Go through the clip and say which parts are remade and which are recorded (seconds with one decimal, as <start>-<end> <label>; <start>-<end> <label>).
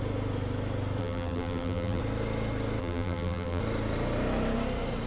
0.0-1.0 recorded; 1.0-2.0 remade; 2.0-2.8 recorded; 2.8-3.6 remade; 3.6-5.1 recorded